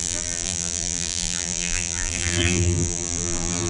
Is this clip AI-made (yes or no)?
yes